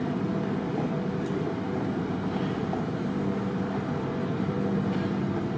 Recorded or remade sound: recorded